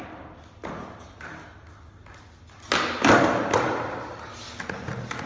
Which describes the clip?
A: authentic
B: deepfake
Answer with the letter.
A